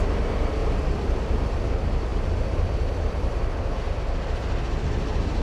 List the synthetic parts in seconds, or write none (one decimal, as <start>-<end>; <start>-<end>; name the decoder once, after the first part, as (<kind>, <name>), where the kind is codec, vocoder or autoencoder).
0.6-1.7 (vocoder, BigVGAN v2); 2.1-3.4